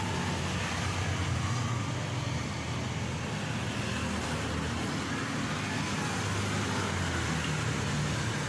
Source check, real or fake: real